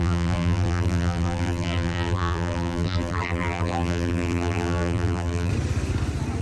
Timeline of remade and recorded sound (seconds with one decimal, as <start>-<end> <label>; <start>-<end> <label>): 0.0-5.5 remade; 5.5-6.4 recorded